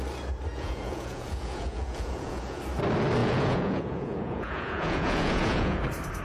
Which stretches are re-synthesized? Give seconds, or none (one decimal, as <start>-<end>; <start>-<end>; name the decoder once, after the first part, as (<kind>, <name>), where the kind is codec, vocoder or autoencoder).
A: 0.5-2.6 (vocoder, Vocos); 3.2-5.8